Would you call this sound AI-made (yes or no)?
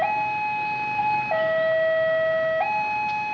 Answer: no